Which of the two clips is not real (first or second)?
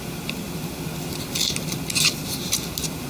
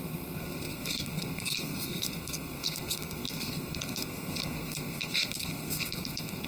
second